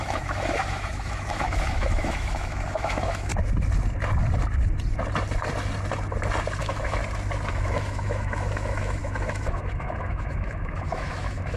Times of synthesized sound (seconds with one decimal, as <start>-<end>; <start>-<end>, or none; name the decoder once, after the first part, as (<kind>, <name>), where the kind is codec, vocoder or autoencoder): 0.0-3.3 (autoencoder, DAC-VAE); 6.6-7.0; 7.5-11.6